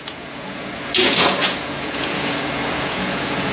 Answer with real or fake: fake